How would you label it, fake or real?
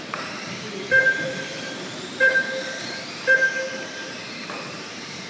fake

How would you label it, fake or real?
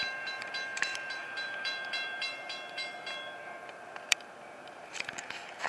fake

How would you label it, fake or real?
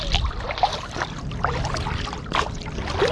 fake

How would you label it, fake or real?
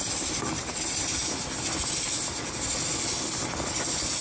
real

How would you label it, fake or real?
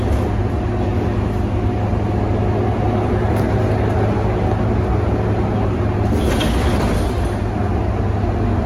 real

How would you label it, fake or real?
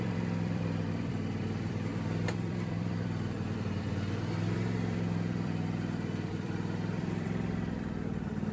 fake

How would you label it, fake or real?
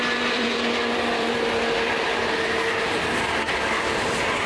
fake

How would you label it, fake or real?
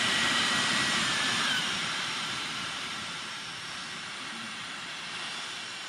fake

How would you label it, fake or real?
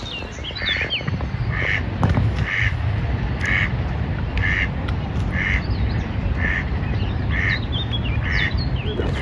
real